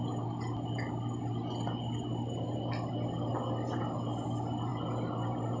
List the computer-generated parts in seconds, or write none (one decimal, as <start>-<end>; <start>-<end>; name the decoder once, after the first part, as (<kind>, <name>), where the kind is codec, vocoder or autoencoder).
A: none